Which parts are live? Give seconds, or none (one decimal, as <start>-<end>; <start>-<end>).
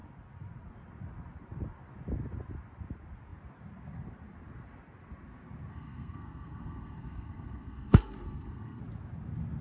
0.0-5.7; 8.8-9.6